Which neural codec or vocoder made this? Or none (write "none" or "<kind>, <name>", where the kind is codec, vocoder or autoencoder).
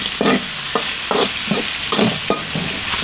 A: none